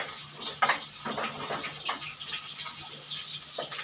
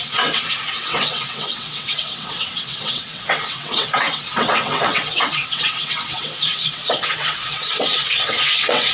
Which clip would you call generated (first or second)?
second